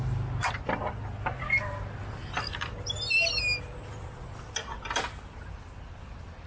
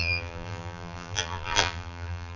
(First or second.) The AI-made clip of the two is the second